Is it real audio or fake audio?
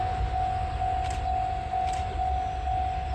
real